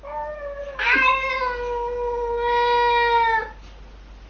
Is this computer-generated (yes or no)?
no